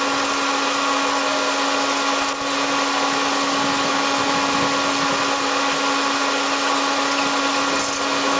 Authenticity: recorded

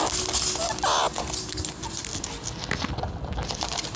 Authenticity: recorded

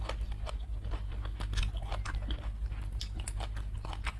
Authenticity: recorded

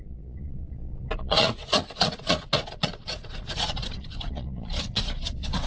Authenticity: remade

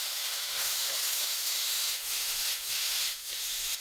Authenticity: remade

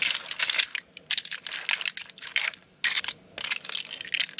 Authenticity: recorded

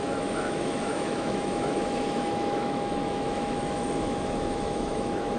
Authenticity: remade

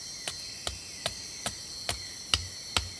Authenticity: recorded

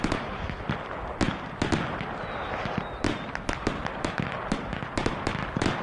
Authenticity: recorded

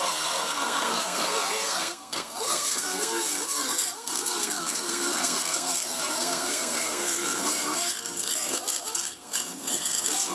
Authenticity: remade